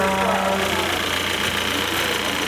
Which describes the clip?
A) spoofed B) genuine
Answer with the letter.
B